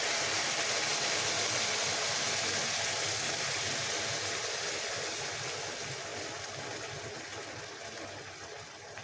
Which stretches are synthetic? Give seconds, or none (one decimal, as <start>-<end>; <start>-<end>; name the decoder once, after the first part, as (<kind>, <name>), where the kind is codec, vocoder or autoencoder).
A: none